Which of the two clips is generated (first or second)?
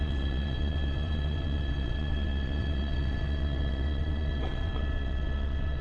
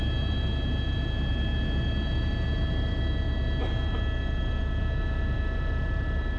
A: first